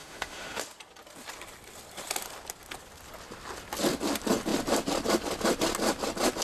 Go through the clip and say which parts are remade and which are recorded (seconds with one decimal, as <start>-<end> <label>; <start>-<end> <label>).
0.0-0.6 remade; 0.6-6.4 recorded